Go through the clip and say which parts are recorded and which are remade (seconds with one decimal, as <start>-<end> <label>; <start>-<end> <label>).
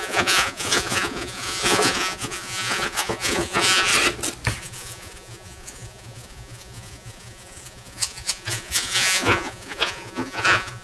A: 0.0-3.9 remade; 3.9-4.6 recorded; 4.6-10.8 remade